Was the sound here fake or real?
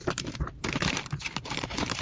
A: fake